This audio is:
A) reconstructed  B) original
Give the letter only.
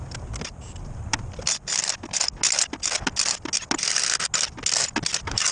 B